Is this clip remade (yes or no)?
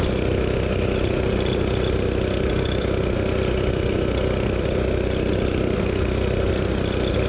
no